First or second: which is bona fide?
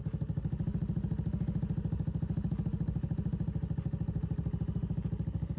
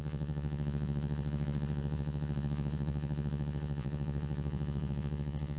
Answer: first